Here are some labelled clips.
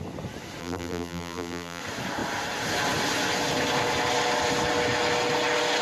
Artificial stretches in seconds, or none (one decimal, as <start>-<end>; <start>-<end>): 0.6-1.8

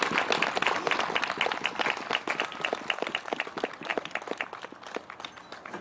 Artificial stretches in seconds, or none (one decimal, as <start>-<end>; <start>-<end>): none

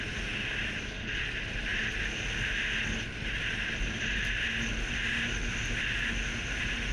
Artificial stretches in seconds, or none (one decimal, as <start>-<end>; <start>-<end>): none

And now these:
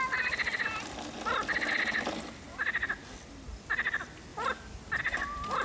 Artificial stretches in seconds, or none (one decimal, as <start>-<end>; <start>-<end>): none